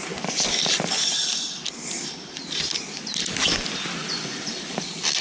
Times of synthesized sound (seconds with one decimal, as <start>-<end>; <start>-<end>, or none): 4.0-4.5